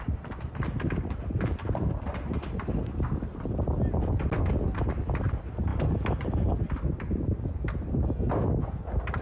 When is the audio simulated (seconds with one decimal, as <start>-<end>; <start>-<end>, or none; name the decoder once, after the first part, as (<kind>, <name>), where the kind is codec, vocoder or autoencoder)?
none

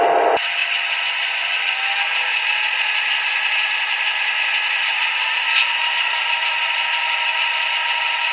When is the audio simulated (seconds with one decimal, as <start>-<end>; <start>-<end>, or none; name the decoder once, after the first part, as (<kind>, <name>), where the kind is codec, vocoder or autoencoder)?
none

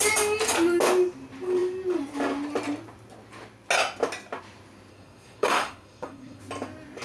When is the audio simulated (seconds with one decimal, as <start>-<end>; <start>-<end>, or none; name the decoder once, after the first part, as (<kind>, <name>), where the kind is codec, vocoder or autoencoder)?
4.9-6.4 (codec, SNAC)

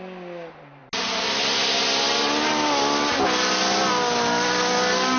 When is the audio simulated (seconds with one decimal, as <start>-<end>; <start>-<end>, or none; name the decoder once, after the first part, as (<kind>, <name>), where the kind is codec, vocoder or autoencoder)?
none

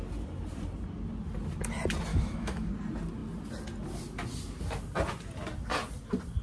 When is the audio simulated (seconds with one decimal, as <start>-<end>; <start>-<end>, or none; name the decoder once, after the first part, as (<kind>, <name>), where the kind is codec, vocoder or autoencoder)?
2.1-2.7 (autoencoder, DAC-VAE)